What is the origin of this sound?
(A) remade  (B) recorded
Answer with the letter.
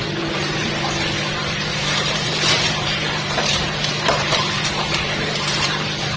A